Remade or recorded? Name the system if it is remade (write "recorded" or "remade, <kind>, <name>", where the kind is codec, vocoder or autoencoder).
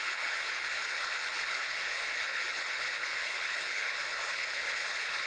remade, codec, HILCodec